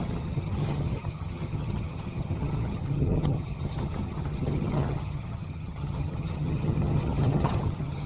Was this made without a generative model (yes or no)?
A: no